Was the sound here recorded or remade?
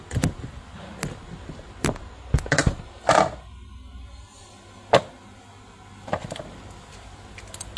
recorded